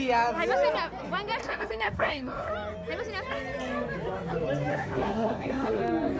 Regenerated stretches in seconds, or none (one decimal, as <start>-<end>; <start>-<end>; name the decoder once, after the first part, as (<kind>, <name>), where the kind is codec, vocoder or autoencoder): 1.4-2.5 (codec, SNAC); 4.7-5.8